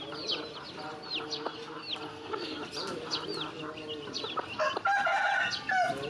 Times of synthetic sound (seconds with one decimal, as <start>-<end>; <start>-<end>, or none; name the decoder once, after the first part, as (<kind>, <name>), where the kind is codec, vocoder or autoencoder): 2.1-2.6 (codec, SNAC)